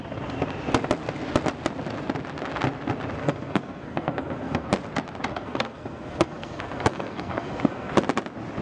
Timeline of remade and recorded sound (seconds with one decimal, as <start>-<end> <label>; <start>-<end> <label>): 0.0-3.2 recorded; 3.2-4.7 remade; 4.7-5.3 recorded; 5.3-7.9 remade; 7.9-8.6 recorded